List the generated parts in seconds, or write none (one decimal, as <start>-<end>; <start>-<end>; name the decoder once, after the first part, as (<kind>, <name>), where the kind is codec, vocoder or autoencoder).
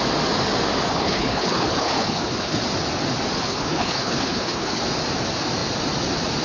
0.9-2.6 (codec, HILCodec); 3.4-4.8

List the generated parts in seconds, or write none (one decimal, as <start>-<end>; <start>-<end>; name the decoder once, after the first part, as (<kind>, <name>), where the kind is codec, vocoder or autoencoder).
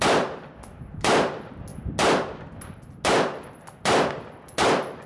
none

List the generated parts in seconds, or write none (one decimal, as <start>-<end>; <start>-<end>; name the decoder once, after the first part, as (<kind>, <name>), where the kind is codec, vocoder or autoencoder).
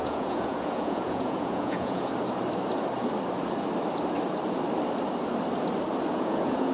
0.0-2.1 (vocoder, Vocos); 6.1-6.7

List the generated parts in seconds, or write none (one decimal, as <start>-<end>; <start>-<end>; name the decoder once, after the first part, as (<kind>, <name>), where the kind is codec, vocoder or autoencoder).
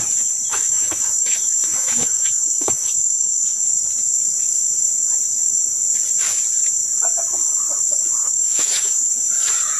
0.5-3.6 (autoencoder, DAC-VAE); 8.2-9.1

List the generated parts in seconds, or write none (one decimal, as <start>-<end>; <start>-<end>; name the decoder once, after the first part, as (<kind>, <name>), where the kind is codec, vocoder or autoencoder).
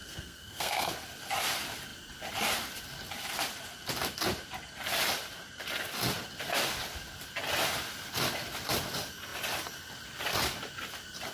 0.0-0.9 (codec, SNAC)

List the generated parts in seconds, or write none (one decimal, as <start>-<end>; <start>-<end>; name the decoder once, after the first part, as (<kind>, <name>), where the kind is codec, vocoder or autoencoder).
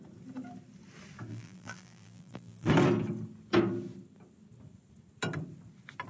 1.3-2.7 (vocoder, BigVGAN v2)